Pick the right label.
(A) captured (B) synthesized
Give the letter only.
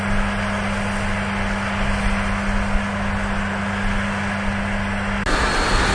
A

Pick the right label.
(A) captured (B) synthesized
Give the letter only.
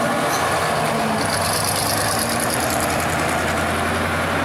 A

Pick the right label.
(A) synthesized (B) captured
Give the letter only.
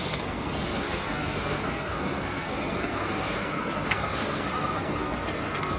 A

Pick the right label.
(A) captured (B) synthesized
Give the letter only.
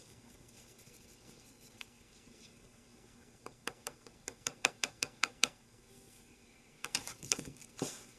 B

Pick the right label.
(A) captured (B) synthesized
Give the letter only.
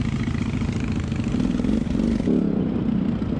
A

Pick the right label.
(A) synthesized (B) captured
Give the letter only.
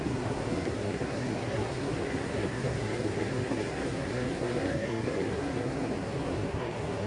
A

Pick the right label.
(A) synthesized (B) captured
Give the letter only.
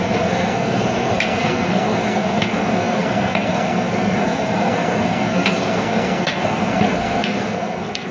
A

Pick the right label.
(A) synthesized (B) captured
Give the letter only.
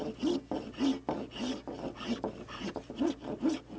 B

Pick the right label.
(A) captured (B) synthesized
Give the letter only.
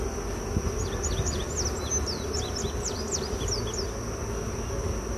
A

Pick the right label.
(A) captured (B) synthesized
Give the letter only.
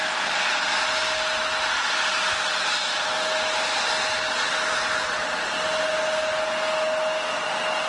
A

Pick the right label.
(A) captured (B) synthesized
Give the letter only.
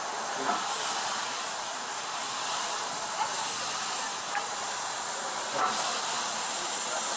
A